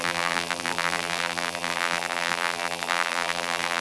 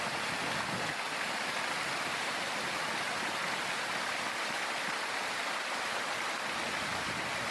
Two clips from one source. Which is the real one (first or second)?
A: second